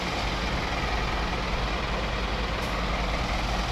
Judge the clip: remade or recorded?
recorded